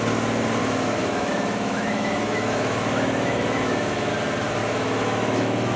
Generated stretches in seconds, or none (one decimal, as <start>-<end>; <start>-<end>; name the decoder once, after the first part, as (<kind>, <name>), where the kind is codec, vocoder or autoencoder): 0.6-4.1 (autoencoder, DAC-VAE); 4.6-5.8